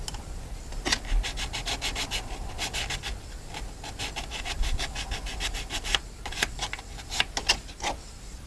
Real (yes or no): yes